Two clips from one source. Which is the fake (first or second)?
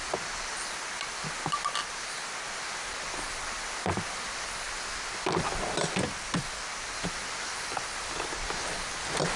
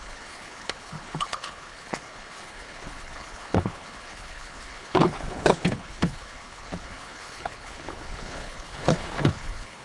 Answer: second